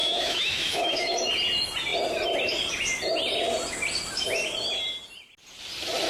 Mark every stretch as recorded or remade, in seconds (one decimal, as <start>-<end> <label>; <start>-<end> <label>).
0.0-1.3 remade; 1.3-6.1 recorded